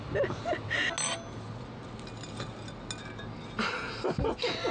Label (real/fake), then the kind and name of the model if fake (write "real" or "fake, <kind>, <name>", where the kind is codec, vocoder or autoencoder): real